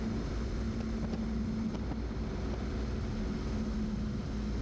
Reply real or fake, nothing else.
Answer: real